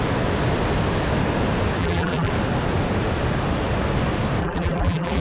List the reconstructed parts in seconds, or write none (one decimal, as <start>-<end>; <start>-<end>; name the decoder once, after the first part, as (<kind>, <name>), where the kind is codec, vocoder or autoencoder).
1.8-2.3 (vocoder, BigVGAN v2); 4.4-5.2

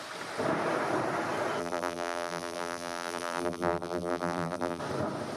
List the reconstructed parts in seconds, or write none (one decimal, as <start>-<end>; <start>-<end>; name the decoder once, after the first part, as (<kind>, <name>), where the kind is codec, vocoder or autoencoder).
1.6-4.8 (vocoder, BigVGAN v2)